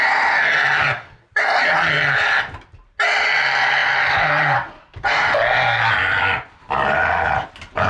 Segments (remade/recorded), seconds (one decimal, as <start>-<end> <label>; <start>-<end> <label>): 0.0-3.8 recorded; 3.8-7.5 remade; 7.5-7.9 recorded